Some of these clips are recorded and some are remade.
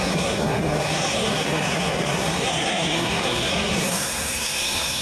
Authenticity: remade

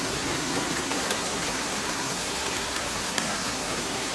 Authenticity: remade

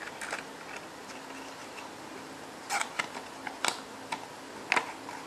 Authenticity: recorded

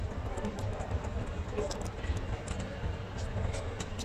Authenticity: recorded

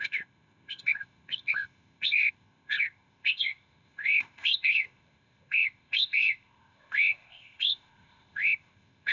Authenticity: remade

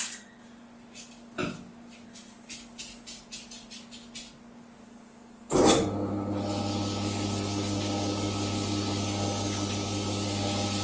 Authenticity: recorded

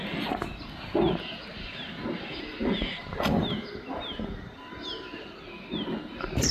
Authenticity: recorded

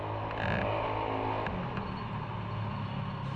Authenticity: recorded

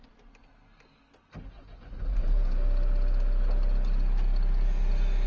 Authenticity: recorded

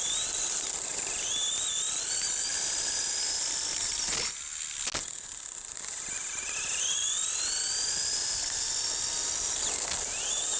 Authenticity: recorded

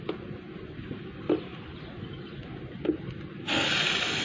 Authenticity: recorded